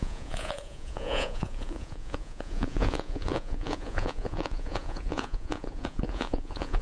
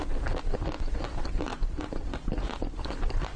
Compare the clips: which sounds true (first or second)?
second